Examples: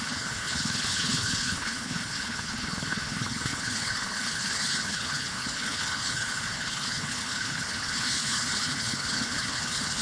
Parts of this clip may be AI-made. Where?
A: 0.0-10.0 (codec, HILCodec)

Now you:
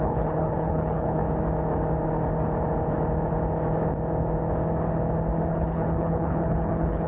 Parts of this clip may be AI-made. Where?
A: 0.0-1.2 (codec, HILCodec); 5.5-7.1

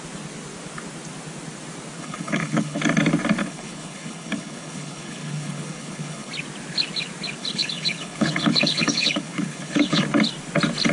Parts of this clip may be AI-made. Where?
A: 2.0-2.8 (codec, HILCodec); 3.4-6.3; 7.4-10.0

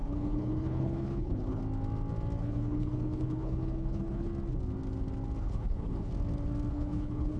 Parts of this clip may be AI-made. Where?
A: 0.0-1.6 (codec, HILCodec); 2.4-4.3; 5.4-6.1; 6.7-7.4

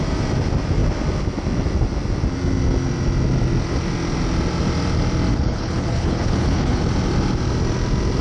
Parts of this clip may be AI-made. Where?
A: 5.3-6.8 (codec, HILCodec)

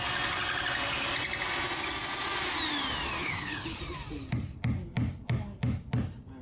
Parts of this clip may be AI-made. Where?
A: 3.2-3.8 (codec, HILCodec)

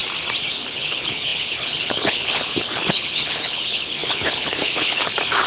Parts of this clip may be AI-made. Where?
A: 0.5-5.5 (codec, HILCodec)

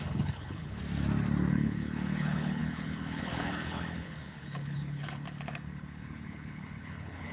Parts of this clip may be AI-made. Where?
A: 0.0-0.8 (codec, HILCodec); 1.5-7.3